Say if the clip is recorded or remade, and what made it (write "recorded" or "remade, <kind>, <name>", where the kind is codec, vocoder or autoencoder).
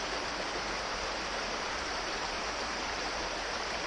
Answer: remade, vocoder, BigVGAN v2